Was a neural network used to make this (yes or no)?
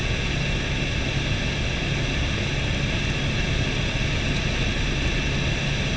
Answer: no